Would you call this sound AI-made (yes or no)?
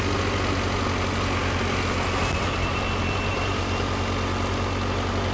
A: no